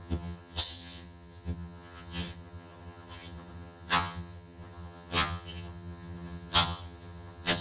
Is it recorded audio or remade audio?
remade